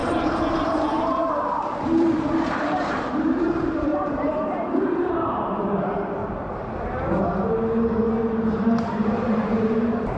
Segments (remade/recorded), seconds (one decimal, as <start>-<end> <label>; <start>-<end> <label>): 0.0-6.2 remade; 6.2-8.5 recorded; 8.5-10.2 remade